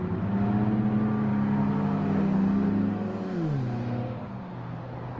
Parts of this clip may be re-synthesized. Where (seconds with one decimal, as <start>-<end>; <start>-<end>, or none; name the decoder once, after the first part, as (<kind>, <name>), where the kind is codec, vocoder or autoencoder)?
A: none